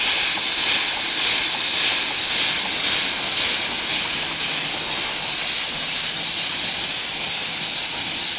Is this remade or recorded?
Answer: recorded